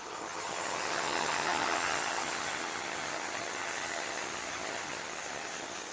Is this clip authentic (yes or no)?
no